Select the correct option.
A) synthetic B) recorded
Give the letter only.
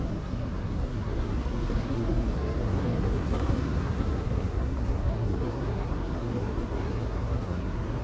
A